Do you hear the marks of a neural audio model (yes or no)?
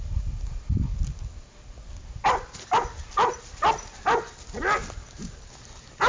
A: no